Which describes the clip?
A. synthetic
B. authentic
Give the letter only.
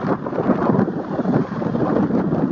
A